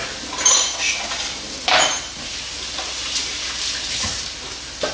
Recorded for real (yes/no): yes